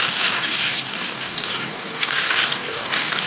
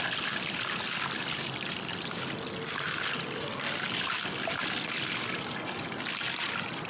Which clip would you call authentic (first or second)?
second